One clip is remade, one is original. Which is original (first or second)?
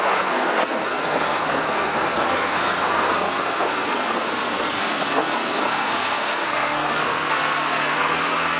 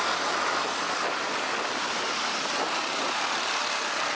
second